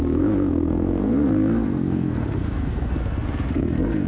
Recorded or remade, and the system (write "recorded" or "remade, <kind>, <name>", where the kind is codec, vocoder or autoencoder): remade, codec, SNAC